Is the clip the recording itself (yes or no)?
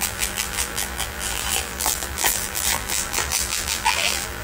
no